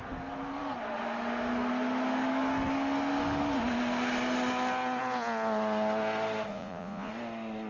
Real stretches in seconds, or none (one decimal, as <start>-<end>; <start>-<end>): 0.0-6.5; 7.1-7.7